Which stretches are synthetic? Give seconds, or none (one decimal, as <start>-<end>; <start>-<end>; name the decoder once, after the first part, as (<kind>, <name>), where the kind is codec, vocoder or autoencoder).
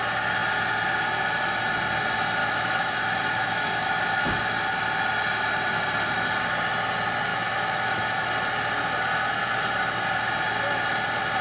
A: 2.4-4.4 (autoencoder, DAC-VAE); 7.3-8.3